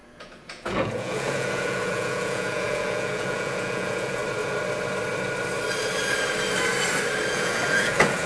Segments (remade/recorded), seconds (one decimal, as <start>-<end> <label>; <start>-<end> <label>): 0.0-4.2 remade; 4.2-7.3 recorded; 7.3-8.3 remade